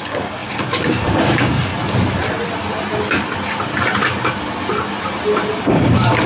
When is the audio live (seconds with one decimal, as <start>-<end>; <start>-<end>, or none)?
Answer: 1.7-5.5

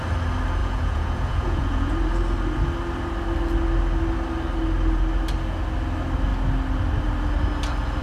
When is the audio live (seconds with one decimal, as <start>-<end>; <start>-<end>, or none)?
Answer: 0.0-0.6; 1.9-8.0

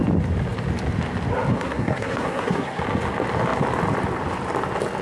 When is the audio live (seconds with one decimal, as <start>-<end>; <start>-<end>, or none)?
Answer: 0.0-1.5; 2.8-5.0

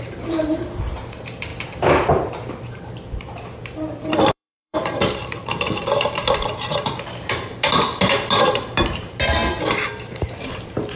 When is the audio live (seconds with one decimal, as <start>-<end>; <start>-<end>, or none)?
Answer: 1.5-2.1